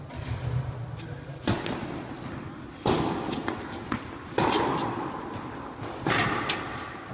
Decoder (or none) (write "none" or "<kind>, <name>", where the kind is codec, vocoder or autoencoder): none